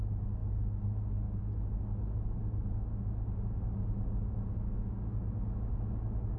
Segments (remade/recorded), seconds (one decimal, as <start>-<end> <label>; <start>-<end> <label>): 0.0-6.4 recorded

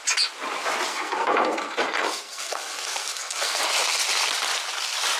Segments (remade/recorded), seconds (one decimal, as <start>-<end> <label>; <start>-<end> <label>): 0.0-0.9 recorded; 0.9-3.6 remade; 3.6-5.2 recorded

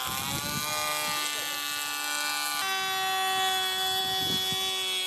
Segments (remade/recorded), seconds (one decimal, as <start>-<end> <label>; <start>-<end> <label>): 0.0-5.1 recorded

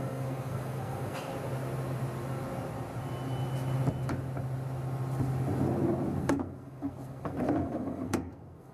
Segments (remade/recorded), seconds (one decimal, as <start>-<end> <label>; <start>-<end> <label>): 0.0-1.3 remade; 1.3-6.2 recorded; 6.2-8.7 remade